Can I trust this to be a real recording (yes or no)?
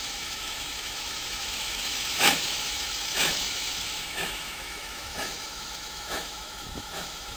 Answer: no